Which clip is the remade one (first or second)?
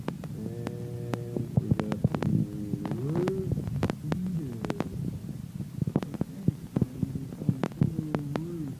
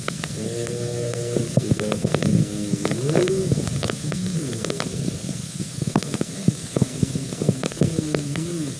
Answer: second